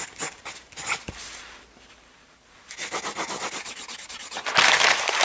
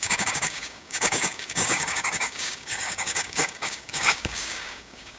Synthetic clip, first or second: second